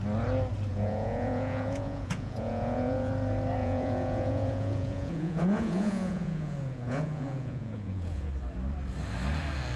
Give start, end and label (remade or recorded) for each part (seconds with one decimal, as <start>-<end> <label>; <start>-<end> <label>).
0.0-0.7 recorded; 0.7-3.1 remade; 3.1-3.6 recorded; 3.6-8.3 remade; 8.3-9.8 recorded

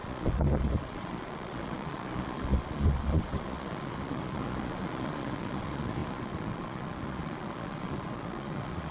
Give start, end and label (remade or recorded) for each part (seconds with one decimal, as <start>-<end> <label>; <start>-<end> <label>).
0.0-8.9 remade

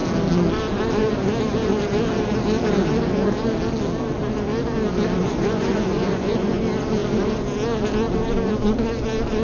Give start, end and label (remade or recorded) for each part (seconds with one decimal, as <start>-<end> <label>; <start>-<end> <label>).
0.0-5.2 recorded; 5.2-6.6 remade; 6.6-9.4 recorded